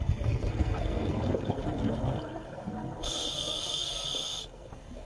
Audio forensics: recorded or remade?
remade